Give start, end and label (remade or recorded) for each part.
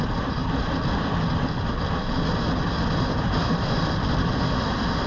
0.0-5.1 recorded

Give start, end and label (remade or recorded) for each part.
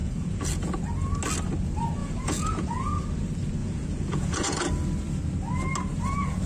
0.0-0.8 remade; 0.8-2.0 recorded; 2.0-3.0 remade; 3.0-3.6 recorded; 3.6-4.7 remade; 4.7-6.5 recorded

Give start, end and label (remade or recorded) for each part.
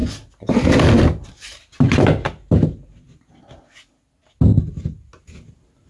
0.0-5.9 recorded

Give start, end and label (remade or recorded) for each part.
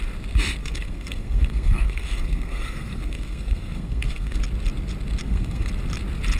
0.0-0.6 recorded; 0.6-4.4 remade; 4.4-5.2 recorded; 5.2-5.7 remade; 5.7-6.4 recorded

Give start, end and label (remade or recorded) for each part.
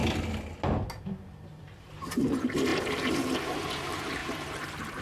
0.0-1.0 recorded; 1.0-2.7 remade; 2.7-3.5 recorded; 3.5-5.0 remade